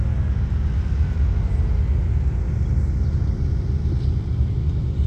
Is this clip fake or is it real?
real